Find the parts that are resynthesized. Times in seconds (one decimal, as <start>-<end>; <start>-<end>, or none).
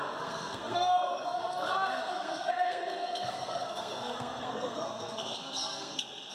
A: 0.0-6.3